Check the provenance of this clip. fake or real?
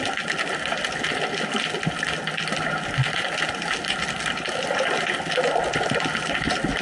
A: real